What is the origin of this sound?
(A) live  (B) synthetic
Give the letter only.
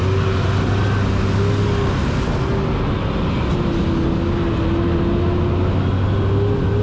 A